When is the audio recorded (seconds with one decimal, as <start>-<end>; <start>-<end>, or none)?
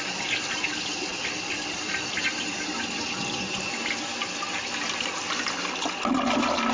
0.0-6.7